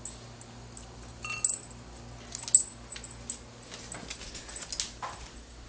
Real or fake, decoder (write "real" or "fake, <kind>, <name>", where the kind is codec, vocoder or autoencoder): real